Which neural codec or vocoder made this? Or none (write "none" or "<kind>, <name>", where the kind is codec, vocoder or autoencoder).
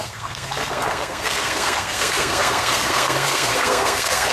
codec, SNAC